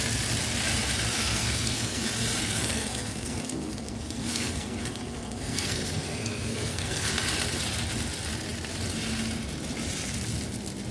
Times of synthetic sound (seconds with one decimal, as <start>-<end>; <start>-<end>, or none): 1.2-2.0; 2.4-7.1